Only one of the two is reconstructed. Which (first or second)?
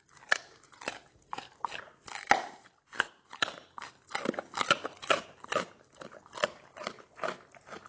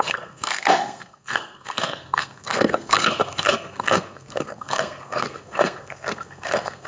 second